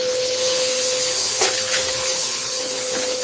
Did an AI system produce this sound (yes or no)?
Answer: yes